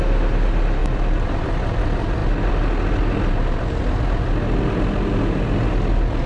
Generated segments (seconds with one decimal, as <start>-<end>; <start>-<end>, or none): 0.8-1.4

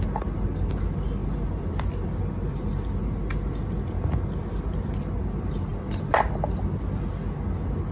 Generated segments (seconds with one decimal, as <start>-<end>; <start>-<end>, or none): none

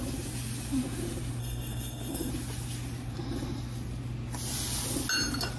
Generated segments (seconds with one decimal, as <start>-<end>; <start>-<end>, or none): 1.4-2.3

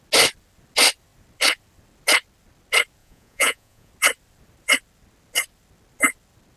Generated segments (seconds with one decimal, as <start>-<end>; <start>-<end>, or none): 3.0-3.9

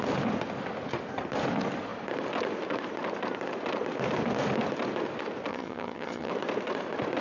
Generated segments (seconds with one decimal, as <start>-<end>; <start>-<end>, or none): 5.5-6.3